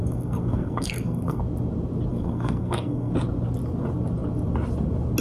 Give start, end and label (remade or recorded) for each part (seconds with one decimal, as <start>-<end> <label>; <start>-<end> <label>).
0.0-1.4 remade; 1.4-2.1 recorded; 2.1-3.1 remade; 3.1-5.2 recorded